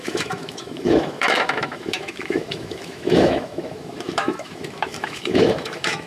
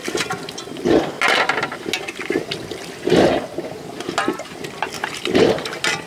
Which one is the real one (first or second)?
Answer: second